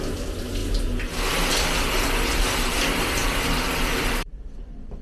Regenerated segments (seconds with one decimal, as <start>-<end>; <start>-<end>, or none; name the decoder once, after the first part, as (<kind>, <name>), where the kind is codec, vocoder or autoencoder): 0.0-0.6 (vocoder, BigVGAN v2); 1.5-5.0